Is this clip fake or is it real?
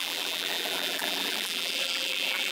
fake